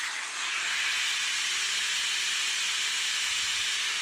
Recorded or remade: recorded